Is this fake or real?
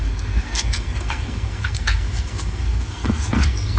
fake